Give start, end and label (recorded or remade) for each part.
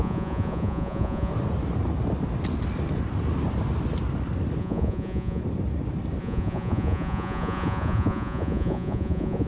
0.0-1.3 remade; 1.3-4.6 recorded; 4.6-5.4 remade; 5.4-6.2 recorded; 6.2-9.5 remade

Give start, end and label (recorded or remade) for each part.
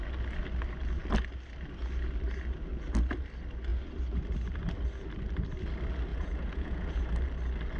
0.0-6.1 recorded; 6.1-7.1 remade; 7.1-7.8 recorded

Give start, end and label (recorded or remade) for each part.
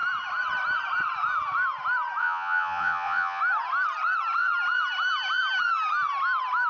0.0-2.2 recorded; 2.2-3.4 remade; 3.4-6.7 recorded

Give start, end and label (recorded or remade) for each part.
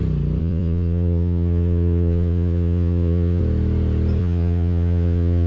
0.0-0.4 recorded; 0.4-3.4 remade; 3.4-4.2 recorded; 4.2-5.5 remade